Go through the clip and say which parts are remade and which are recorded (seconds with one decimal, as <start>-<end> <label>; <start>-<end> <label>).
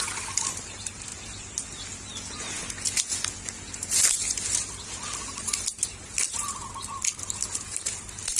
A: 0.0-8.4 recorded